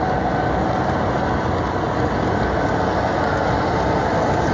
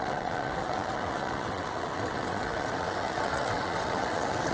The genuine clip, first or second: first